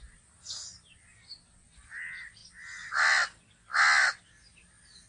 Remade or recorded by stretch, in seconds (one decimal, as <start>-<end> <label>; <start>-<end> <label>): 0.0-5.1 recorded